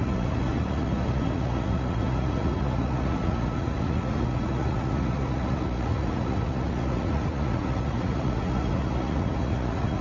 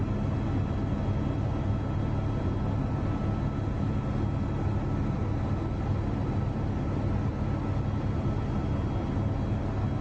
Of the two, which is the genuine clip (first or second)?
second